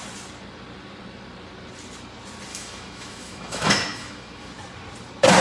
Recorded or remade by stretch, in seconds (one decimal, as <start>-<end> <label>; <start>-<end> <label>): 0.0-2.5 recorded; 2.5-4.5 remade; 4.5-5.4 recorded

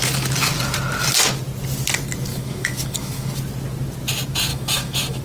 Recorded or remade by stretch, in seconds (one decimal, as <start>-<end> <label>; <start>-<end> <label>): 0.0-2.3 recorded; 2.3-3.3 remade; 3.3-4.5 recorded; 4.5-5.2 remade